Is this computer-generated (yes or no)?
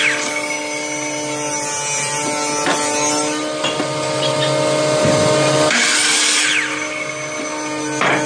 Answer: no